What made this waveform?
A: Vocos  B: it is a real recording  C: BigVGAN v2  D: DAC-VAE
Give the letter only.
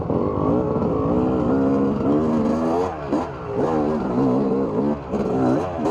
B